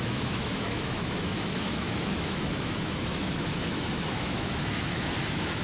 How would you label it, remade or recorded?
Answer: remade